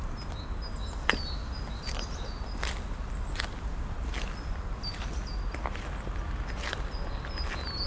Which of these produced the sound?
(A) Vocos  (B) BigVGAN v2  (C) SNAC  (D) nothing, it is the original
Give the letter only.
D